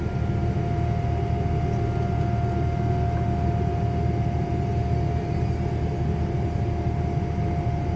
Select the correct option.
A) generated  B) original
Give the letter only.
B